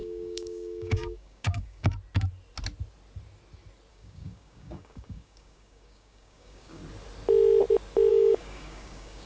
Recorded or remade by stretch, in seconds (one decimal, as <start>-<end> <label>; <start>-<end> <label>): 0.0-1.9 remade; 1.9-3.9 recorded; 3.9-6.8 remade; 6.8-8.1 recorded; 8.1-9.3 remade